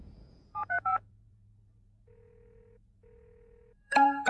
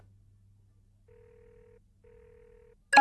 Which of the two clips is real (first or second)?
second